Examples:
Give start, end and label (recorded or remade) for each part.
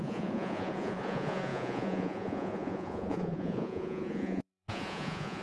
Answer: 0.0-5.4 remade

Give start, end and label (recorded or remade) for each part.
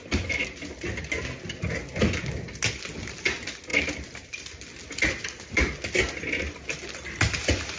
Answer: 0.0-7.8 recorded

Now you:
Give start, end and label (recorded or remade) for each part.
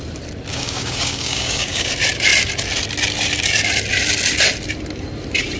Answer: 0.0-0.5 recorded; 0.5-1.9 remade; 1.9-5.6 recorded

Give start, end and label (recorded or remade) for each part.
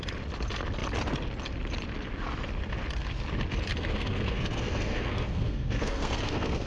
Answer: 0.0-3.7 recorded; 3.7-6.7 remade